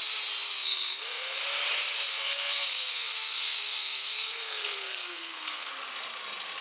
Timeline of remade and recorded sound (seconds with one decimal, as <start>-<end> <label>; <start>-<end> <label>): 0.0-0.5 recorded; 0.5-1.4 remade; 1.4-2.1 recorded; 2.1-5.7 remade; 5.7-6.6 recorded